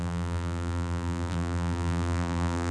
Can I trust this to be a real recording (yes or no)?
no